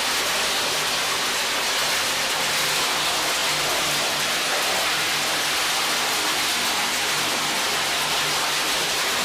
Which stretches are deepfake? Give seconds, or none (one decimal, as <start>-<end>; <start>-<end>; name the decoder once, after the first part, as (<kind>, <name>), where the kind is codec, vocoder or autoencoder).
none